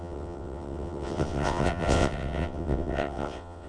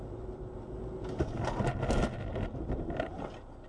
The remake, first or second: first